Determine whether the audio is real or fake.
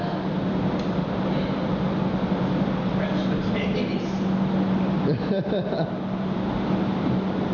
real